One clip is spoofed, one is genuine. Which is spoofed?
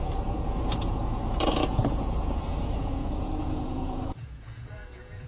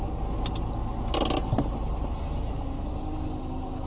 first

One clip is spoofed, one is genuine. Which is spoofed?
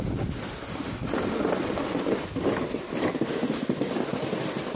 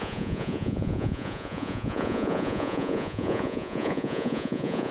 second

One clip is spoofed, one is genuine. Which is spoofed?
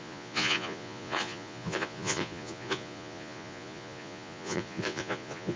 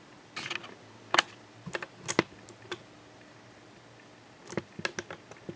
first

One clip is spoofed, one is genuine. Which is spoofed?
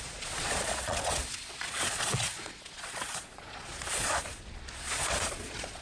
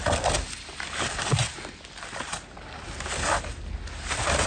first